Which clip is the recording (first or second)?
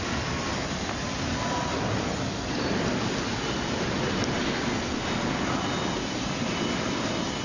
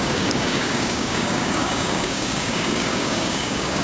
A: first